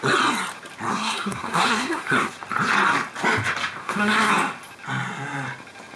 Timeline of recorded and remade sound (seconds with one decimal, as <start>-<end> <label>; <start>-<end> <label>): 0.0-0.9 recorded; 0.9-2.3 remade; 2.3-3.8 recorded; 3.8-4.3 remade; 4.3-6.0 recorded